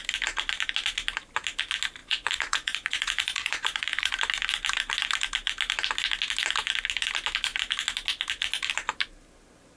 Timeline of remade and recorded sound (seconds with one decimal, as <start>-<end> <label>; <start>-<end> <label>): 0.0-2.0 recorded; 2.0-4.1 remade; 4.1-9.8 recorded